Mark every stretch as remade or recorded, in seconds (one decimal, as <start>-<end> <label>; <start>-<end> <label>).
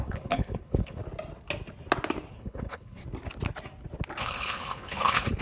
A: 0.0-1.0 remade; 1.0-2.3 recorded; 2.3-3.0 remade; 3.0-4.2 recorded; 4.2-5.4 remade